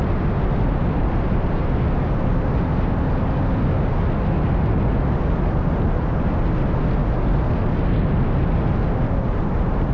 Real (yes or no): yes